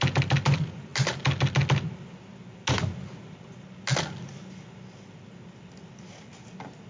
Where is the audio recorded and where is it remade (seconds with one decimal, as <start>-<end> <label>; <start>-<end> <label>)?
0.0-6.9 recorded